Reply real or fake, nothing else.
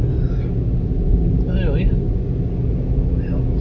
real